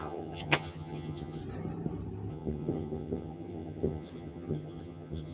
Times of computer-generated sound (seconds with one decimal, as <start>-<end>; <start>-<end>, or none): 0.0-1.4; 2.3-5.3